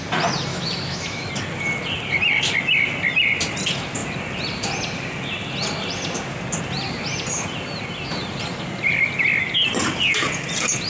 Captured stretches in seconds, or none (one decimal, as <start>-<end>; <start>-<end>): 0.0-0.5; 1.3-10.9